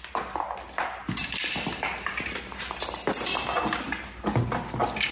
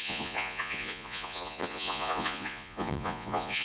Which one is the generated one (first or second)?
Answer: second